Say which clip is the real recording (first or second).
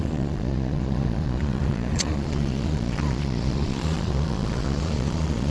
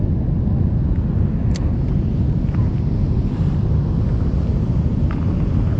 second